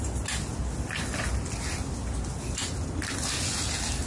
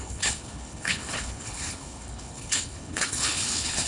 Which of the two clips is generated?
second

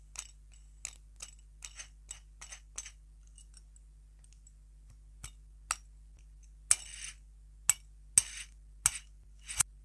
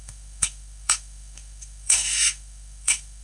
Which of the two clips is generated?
second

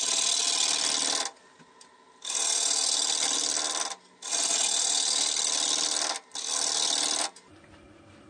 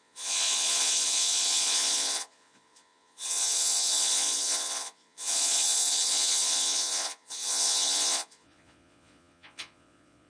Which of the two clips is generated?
second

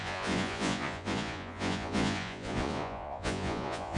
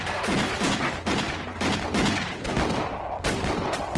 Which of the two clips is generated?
first